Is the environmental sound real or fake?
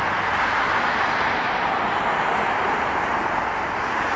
real